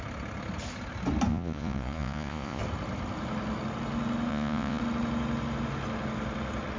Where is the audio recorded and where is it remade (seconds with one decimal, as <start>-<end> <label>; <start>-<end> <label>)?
0.0-1.3 recorded; 1.3-2.6 remade; 2.6-4.3 recorded; 4.3-4.8 remade; 4.8-6.8 recorded